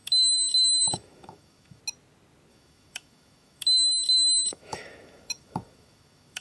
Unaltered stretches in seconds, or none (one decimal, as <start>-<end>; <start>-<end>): 1.8-2.5

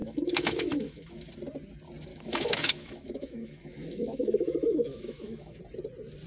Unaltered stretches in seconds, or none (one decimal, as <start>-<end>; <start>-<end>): 1.3-2.1; 5.6-6.3